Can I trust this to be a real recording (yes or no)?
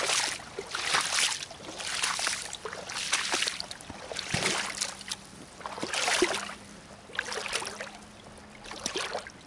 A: yes